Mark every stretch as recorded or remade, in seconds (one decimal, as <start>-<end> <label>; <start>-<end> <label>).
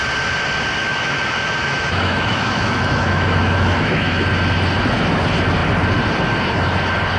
0.0-0.8 recorded; 0.8-4.2 remade; 4.2-7.2 recorded